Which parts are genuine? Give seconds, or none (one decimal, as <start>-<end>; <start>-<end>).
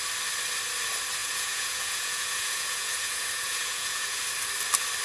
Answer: 0.0-1.2; 4.2-5.0